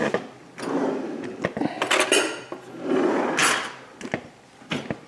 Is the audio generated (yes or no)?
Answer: no